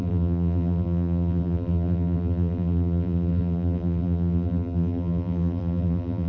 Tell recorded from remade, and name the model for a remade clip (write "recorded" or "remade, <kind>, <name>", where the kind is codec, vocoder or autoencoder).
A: remade, vocoder, BigVGAN v2